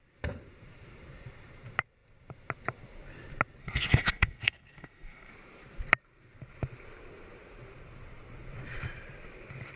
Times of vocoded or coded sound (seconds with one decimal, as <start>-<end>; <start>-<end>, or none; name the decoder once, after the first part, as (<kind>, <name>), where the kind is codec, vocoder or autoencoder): 3.6-5.3 (codec, SNAC)